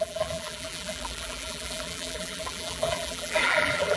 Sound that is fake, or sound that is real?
fake